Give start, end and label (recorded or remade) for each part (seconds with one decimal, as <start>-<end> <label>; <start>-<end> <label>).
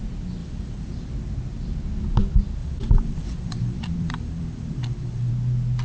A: 0.0-0.4 recorded; 0.4-1.1 remade; 1.1-2.6 recorded; 2.6-5.3 remade; 5.3-5.8 recorded